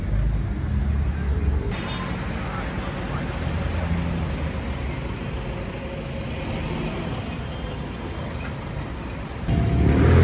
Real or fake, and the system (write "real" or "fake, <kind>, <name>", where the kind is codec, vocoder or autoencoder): real